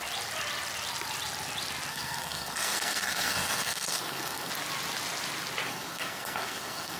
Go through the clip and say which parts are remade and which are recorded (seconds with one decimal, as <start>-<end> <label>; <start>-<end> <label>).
0.0-1.9 recorded; 1.9-4.5 remade; 4.5-5.7 recorded; 5.7-7.0 remade